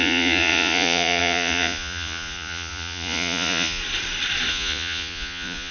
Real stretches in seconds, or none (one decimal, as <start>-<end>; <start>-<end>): 3.8-4.5